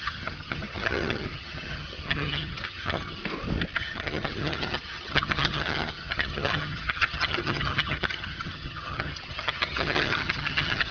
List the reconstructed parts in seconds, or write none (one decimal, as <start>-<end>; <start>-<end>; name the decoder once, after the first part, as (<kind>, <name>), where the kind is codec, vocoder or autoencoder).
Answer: 0.0-3.2 (vocoder, HiFi-GAN); 3.8-10.9